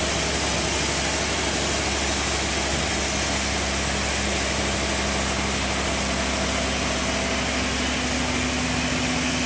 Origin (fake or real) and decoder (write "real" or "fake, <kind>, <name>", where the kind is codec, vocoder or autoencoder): real